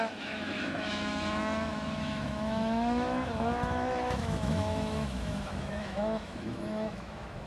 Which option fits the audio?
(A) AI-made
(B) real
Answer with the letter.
A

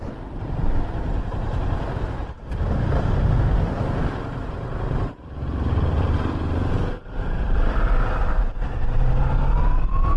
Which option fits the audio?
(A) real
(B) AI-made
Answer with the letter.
A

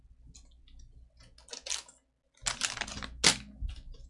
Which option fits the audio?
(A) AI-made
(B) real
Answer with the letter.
B